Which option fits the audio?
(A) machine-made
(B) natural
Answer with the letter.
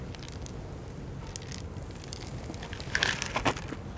B